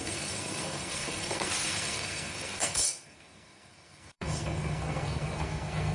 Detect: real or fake fake